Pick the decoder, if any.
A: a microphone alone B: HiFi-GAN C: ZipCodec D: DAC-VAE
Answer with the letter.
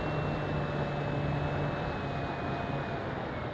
A